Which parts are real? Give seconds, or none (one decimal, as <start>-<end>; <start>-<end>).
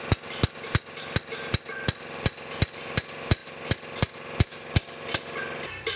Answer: 0.0-6.0